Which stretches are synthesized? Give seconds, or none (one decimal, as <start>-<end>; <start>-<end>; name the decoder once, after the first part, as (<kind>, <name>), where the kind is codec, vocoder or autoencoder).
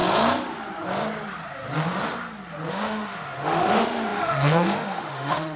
2.7-5.6 (autoencoder, DAC-VAE)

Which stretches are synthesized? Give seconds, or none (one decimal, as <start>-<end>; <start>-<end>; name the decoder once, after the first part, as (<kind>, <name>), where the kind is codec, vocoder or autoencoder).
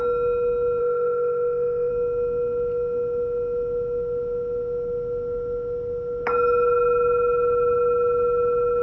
0.8-1.9 (autoencoder, DAC-VAE)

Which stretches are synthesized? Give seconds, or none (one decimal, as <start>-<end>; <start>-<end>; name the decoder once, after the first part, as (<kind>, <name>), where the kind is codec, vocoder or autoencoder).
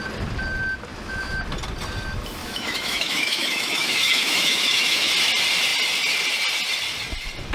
0.9-1.4 (autoencoder, DAC-VAE); 2.4-5.1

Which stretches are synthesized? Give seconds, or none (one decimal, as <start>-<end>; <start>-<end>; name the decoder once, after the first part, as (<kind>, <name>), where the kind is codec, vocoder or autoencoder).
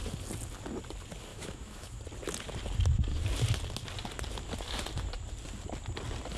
1.3-2.0 (autoencoder, DAC-VAE)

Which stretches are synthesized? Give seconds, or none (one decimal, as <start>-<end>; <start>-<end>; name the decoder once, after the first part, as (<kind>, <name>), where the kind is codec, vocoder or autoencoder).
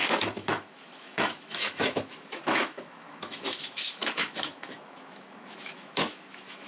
0.0-6.7 (autoencoder, DAC-VAE)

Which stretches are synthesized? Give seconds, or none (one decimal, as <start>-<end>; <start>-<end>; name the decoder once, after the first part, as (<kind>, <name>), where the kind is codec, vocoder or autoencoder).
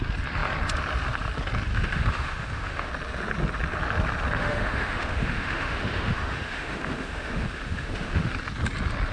1.7-2.9 (autoencoder, DAC-VAE); 4.4-8.3